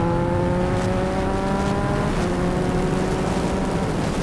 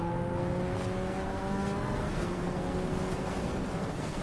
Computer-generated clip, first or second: second